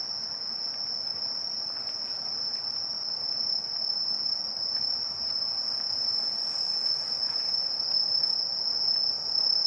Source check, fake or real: real